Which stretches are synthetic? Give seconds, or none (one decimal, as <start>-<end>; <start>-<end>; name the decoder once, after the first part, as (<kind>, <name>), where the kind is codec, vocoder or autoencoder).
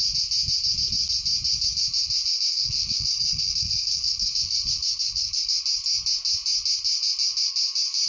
2.5-5.6 (codec, SNAC)